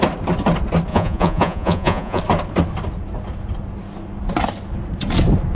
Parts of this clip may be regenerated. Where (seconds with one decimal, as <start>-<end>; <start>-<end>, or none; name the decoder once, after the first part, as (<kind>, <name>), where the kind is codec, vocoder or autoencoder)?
0.9-2.2 (vocoder, Vocos)